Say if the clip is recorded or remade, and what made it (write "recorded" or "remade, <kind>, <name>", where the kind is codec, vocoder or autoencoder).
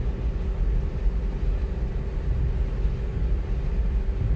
recorded